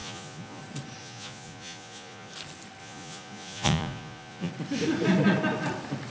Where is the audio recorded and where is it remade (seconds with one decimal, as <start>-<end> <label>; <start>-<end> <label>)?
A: 0.0-0.6 remade; 0.6-1.0 recorded; 1.0-2.3 remade; 2.3-2.8 recorded; 2.8-4.5 remade; 4.5-6.1 recorded